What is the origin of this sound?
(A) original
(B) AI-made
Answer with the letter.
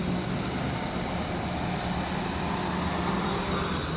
A